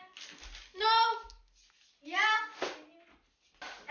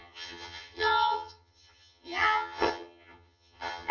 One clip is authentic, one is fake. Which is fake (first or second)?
second